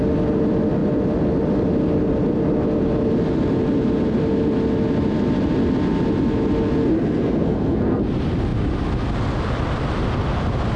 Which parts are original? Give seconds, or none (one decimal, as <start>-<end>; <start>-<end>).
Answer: 0.0-6.8; 8.0-10.8